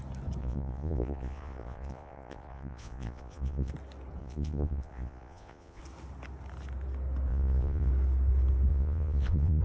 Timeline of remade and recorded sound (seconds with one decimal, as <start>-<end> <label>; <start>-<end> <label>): 0.0-0.4 recorded; 0.4-3.7 remade; 3.7-4.2 recorded; 4.2-5.8 remade; 5.8-7.3 recorded; 7.3-7.9 remade; 7.9-8.7 recorded; 8.7-9.6 remade